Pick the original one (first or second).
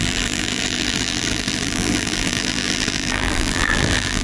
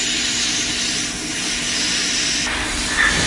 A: second